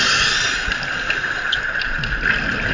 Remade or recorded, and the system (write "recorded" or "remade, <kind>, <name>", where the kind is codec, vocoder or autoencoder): recorded